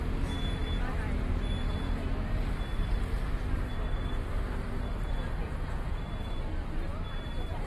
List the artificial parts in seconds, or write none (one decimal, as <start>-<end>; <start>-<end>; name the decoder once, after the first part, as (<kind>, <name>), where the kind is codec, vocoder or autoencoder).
5.4-6.0 (vocoder, Vocos)